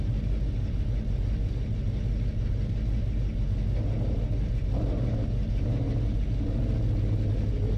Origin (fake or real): real